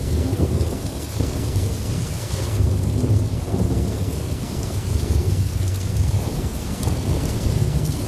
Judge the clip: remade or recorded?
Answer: remade